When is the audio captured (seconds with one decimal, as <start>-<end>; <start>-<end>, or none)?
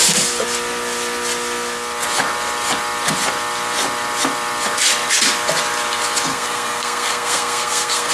0.0-6.3